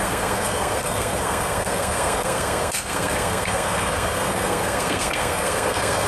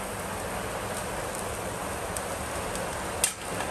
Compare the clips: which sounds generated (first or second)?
first